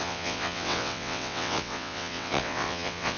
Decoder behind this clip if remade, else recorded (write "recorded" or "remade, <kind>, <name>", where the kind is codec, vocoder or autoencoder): remade, vocoder, WaveNeXt